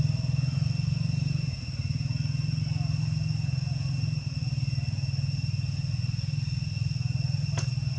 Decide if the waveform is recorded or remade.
recorded